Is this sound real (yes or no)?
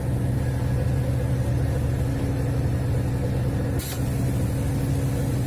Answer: yes